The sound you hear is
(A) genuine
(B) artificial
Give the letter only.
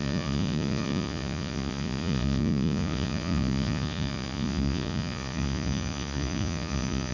B